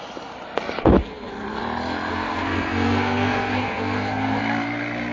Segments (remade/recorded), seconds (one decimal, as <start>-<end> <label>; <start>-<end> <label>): 0.0-1.0 recorded; 1.0-1.6 remade; 1.6-2.1 recorded; 2.1-4.4 remade; 4.4-5.1 recorded

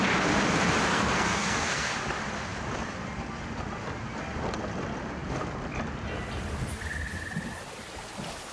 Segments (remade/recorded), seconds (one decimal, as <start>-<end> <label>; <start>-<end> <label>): 0.0-0.9 recorded; 0.9-1.9 remade; 1.9-8.5 recorded

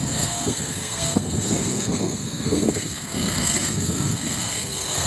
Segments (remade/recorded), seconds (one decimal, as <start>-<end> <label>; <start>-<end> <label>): 0.0-5.1 remade

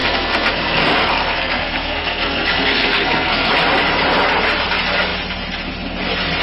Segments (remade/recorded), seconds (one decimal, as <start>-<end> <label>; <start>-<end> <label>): 0.0-3.5 remade; 3.5-6.4 recorded

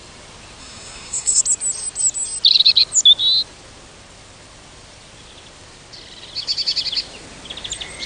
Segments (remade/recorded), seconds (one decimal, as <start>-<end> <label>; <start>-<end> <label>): 0.0-0.6 recorded; 0.6-1.4 remade; 1.4-8.1 recorded

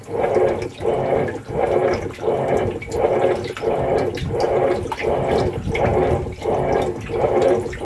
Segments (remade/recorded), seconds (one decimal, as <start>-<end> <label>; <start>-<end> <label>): 0.0-7.8 recorded

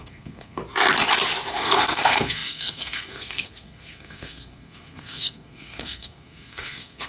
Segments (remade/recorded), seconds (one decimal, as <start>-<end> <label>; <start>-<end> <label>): 0.0-0.6 remade; 0.6-1.5 recorded; 1.5-7.1 remade